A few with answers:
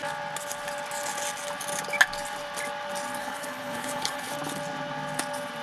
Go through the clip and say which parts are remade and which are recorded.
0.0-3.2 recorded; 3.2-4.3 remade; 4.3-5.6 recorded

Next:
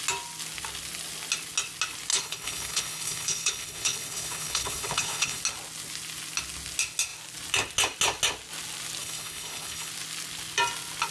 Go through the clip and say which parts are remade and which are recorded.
0.0-2.1 recorded; 2.1-5.4 remade; 5.4-9.0 recorded; 9.0-9.9 remade; 9.9-11.1 recorded

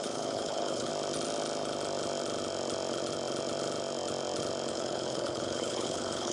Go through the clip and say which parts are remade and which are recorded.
0.0-0.9 remade; 0.9-4.7 recorded; 4.7-6.3 remade

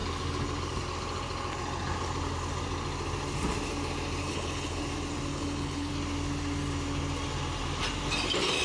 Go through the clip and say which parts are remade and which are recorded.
0.0-4.2 recorded; 4.2-4.8 remade; 4.8-5.3 recorded; 5.3-5.9 remade; 5.9-8.6 recorded

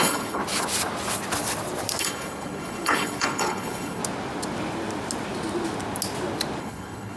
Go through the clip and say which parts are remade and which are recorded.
0.0-0.4 remade; 0.4-2.0 recorded; 2.0-4.0 remade; 4.0-6.6 recorded; 6.6-7.2 remade

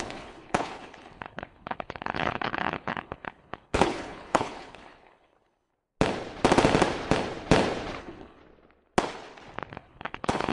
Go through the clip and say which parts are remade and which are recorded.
0.0-5.7 remade; 5.7-8.0 recorded; 8.0-8.4 remade; 8.4-9.7 recorded; 9.7-10.5 remade